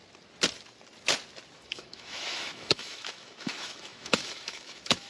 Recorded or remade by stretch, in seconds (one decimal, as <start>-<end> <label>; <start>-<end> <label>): 0.0-1.5 recorded; 1.5-5.1 remade